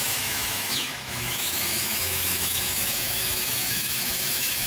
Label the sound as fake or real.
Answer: fake